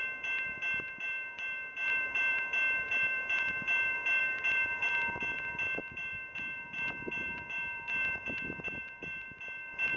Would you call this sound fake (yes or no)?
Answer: yes